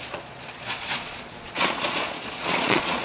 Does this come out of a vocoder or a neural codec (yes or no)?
yes